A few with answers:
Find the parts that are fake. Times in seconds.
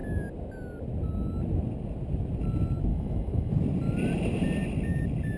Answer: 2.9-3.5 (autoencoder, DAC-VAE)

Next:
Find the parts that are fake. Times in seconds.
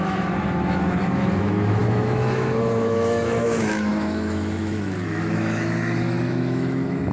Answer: 0.0-7.1 (autoencoder, DAC-VAE)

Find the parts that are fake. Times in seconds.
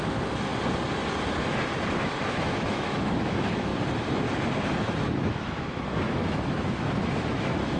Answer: 0.0-0.5 (autoencoder, DAC-VAE); 1.9-3.7; 4.8-7.8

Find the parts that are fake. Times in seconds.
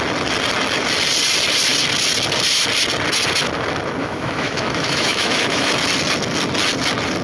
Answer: 4.0-5.7 (autoencoder, DAC-VAE)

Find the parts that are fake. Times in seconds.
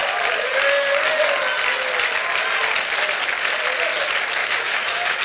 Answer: 4.4-5.2 (autoencoder, DAC-VAE)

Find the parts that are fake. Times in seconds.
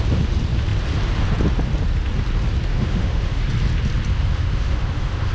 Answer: 2.7-3.4 (autoencoder, DAC-VAE); 4.1-5.3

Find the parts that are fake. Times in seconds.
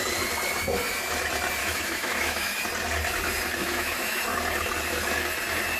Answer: 1.6-2.6 (autoencoder, DAC-VAE); 3.6-4.2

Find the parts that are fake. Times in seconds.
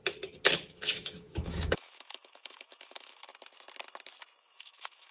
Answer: 0.7-3.3 (autoencoder, DAC-VAE); 4.4-5.1